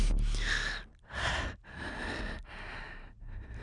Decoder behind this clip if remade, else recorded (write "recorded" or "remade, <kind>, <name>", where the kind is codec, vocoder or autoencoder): recorded